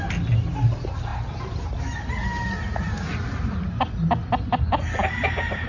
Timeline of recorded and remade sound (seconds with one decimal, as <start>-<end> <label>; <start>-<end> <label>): 0.0-5.7 recorded